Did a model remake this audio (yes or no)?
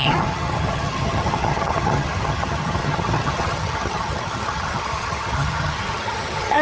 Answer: yes